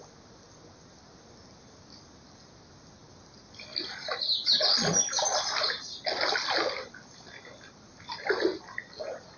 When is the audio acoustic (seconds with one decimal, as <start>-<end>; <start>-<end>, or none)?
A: 0.0-9.4